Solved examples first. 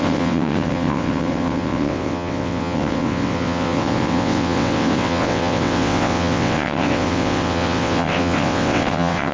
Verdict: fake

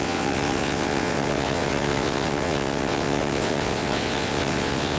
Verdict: fake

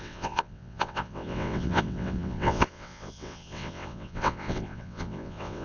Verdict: fake